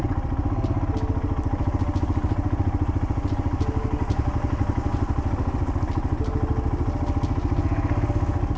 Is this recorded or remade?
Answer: recorded